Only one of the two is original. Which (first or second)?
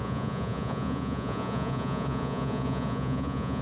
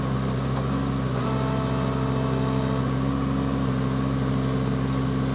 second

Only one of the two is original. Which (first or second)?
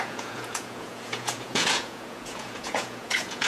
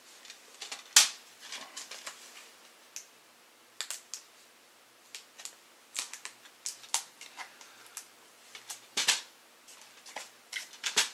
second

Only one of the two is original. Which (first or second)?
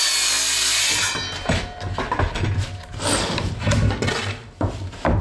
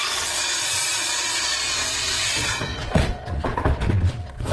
first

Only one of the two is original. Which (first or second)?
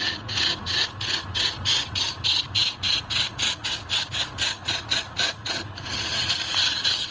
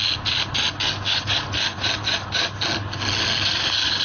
second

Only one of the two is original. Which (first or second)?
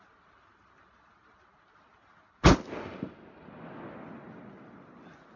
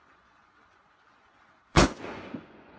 first